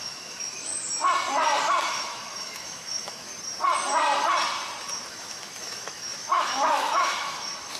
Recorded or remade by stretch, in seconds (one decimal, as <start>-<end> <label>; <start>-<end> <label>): 0.0-0.7 remade; 0.7-1.9 recorded; 1.9-3.3 remade; 3.3-5.1 recorded; 5.1-7.8 remade